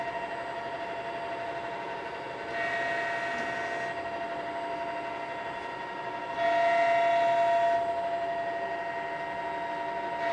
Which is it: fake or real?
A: real